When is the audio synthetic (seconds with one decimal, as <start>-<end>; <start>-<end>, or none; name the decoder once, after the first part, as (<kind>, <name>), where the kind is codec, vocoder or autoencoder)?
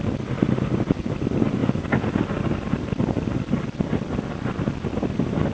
none